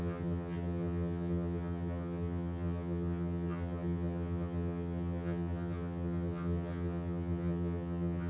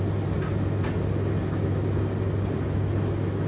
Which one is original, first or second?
second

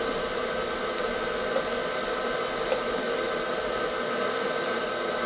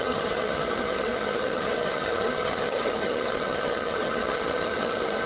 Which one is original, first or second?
first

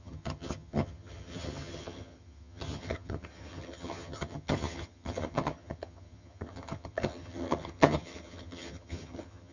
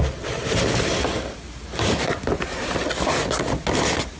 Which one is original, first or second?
second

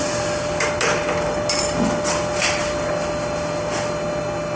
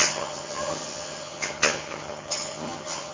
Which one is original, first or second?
first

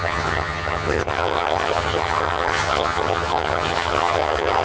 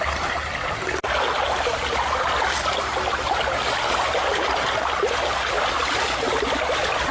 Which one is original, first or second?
second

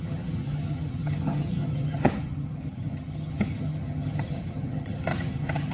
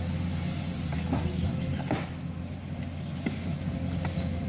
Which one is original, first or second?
second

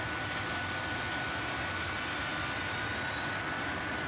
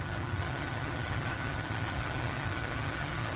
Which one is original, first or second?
first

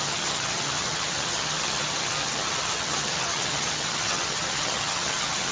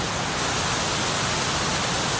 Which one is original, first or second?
second